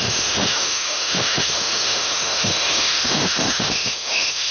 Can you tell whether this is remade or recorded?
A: remade